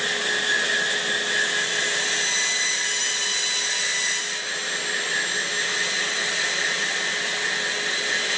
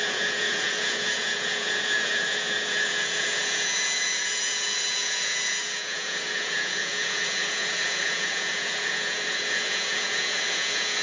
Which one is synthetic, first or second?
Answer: second